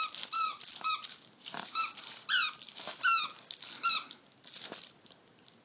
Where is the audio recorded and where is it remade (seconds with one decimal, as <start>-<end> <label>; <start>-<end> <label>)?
0.0-1.4 recorded; 1.4-2.5 remade; 2.5-5.6 recorded